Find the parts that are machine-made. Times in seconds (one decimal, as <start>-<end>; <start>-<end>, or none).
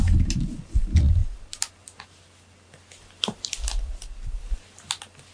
none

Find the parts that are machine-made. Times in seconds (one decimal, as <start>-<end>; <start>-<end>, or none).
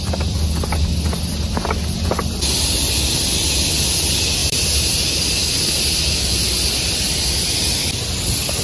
4.4-4.9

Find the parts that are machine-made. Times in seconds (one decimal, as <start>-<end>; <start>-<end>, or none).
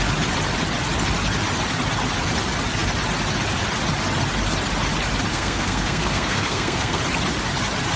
5.3-7.0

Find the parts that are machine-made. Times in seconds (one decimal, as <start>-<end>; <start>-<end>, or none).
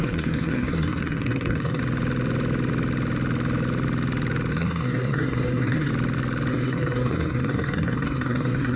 0.0-1.8; 4.5-5.9; 6.5-8.8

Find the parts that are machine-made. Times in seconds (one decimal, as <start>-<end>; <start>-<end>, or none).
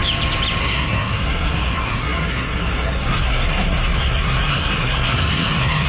0.6-5.9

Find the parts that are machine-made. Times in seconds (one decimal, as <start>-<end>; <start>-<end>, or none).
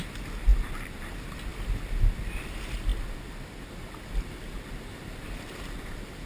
none